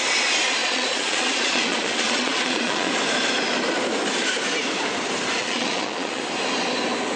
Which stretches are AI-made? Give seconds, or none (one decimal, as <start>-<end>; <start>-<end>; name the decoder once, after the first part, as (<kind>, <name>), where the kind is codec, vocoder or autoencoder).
0.6-2.9 (vocoder, Vocos); 5.4-6.2